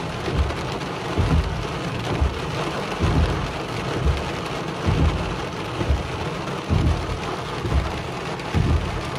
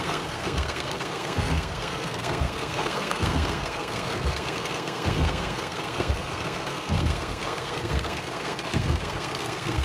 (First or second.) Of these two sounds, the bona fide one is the first